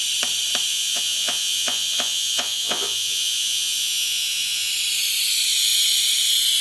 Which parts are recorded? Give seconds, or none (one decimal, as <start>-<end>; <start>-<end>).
0.0-0.7; 4.7-6.6